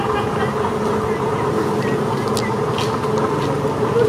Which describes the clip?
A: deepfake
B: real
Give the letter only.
B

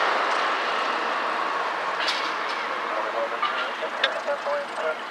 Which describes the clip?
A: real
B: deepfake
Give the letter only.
A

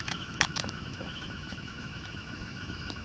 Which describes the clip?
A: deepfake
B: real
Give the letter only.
A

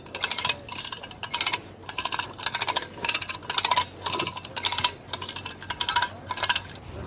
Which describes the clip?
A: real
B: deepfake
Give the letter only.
A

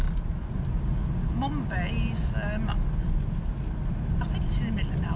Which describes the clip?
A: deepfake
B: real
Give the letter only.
B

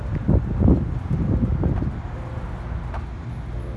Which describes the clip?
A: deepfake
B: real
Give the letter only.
B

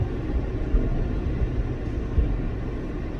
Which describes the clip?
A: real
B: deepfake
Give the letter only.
A